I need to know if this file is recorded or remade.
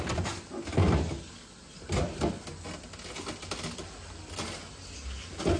recorded